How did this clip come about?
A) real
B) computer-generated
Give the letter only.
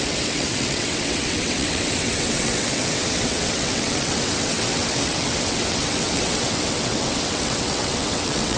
B